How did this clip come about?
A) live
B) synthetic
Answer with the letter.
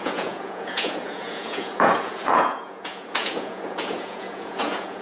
B